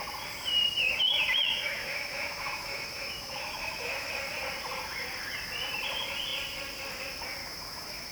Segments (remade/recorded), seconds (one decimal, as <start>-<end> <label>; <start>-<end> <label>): 0.0-0.8 recorded; 0.8-4.1 remade; 4.1-7.4 recorded; 7.4-8.1 remade